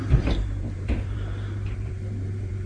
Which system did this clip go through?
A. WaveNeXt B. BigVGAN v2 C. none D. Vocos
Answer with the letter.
B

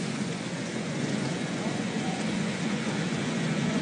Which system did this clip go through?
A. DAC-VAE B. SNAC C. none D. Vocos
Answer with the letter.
D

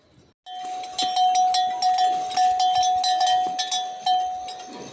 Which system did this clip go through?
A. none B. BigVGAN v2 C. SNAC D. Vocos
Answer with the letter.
A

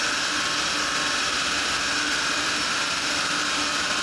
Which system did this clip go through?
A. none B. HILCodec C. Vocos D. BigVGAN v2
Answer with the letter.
A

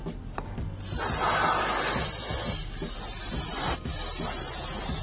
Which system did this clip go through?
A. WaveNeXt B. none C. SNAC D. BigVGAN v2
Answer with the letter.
B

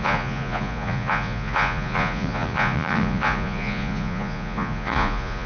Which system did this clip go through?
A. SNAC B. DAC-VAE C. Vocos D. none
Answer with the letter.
C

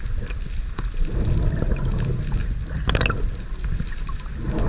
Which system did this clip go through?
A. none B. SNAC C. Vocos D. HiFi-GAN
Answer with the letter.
A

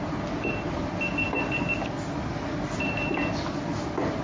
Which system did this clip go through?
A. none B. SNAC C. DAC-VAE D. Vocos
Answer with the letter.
A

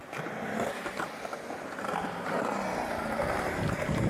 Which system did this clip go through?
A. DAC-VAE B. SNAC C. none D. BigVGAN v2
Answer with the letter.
C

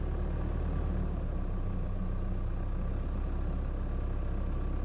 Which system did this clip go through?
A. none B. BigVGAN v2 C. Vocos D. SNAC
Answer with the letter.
A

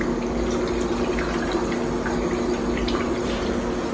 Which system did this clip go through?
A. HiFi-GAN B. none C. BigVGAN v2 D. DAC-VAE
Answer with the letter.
B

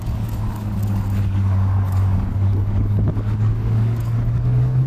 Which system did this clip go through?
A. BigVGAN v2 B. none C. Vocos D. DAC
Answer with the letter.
D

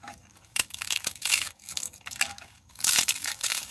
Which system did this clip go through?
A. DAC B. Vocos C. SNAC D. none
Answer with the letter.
A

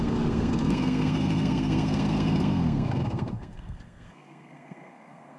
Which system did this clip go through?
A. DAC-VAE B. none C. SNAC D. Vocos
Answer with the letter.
C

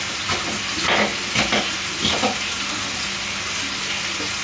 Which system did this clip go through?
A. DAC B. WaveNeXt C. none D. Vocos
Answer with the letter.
C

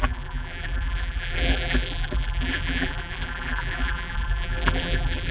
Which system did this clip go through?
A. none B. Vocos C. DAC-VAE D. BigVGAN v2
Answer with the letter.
D